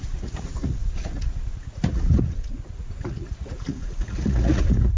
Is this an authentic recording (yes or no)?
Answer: no